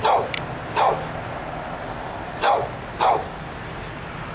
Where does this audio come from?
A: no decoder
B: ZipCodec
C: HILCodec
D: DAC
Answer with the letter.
A